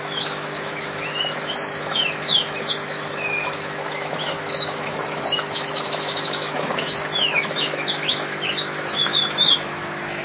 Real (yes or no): no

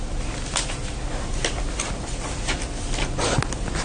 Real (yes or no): yes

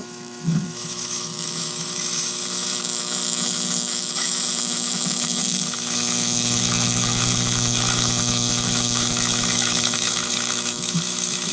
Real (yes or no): no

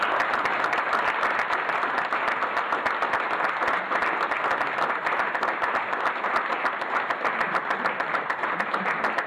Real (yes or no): yes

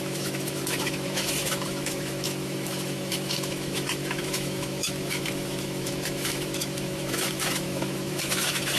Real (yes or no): no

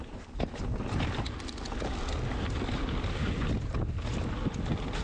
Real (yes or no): yes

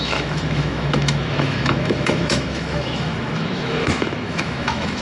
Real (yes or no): no